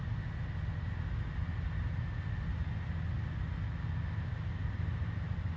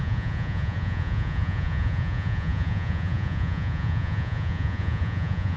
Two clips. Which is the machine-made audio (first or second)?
second